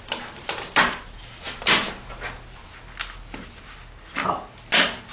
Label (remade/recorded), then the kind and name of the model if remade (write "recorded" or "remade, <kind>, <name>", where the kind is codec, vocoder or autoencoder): recorded